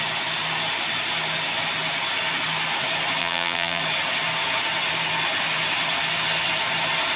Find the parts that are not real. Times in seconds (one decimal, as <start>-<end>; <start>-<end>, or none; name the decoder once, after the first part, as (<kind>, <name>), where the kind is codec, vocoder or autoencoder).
3.2-3.8 (vocoder, BigVGAN v2)